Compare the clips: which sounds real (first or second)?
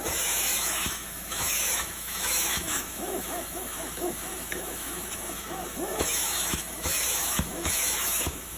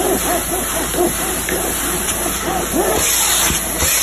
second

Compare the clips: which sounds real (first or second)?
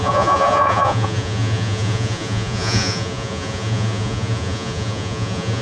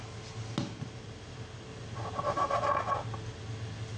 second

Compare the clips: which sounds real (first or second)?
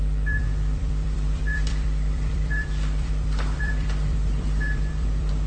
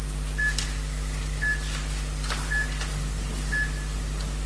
second